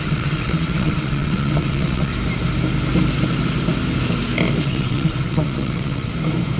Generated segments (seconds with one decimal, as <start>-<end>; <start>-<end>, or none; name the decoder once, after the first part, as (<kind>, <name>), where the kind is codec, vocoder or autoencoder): 0.0-2.1 (vocoder, WaveNeXt); 4.6-6.1